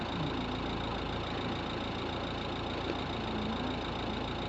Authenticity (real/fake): real